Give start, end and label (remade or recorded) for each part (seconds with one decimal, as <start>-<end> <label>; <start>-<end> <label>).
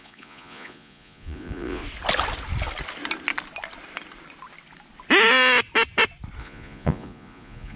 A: 0.0-1.8 remade; 1.8-6.4 recorded; 6.4-7.8 remade